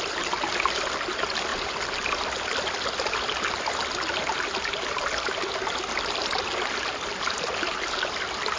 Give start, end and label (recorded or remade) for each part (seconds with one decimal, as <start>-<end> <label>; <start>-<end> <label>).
0.0-8.6 recorded